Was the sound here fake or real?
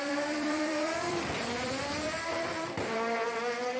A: fake